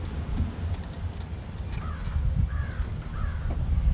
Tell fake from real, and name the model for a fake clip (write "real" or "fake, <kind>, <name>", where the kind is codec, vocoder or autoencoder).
real